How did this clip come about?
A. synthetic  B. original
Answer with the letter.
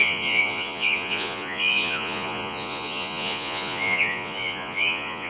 A